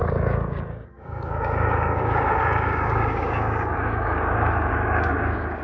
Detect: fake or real fake